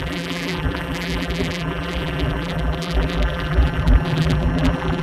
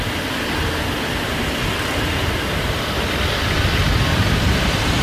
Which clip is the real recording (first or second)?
second